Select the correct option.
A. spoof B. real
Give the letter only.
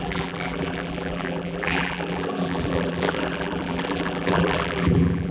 A